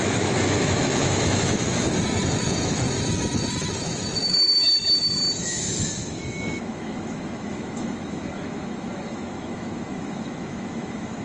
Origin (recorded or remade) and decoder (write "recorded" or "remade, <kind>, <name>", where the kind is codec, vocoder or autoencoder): remade, autoencoder, DAC-VAE